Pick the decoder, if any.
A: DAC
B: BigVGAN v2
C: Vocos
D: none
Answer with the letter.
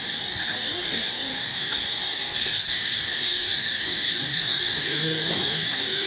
A